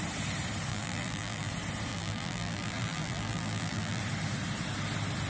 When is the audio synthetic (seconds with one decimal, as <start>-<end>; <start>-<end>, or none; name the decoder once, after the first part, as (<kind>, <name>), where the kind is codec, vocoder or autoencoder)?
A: 0.7-1.5 (vocoder, BigVGAN v2); 1.9-4.0